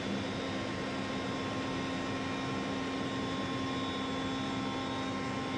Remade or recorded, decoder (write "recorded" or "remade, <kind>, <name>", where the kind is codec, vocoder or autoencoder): recorded